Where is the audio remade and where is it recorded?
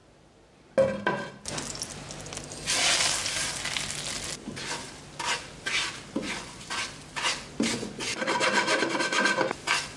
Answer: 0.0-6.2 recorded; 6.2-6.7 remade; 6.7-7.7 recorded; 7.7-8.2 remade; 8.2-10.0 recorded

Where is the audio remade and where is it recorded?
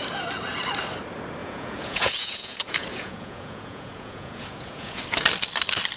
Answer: 0.0-1.4 recorded; 1.4-5.0 remade; 5.0-6.0 recorded